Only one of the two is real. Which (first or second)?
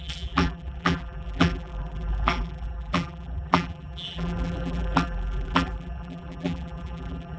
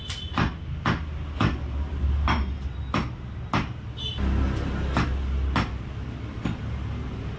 second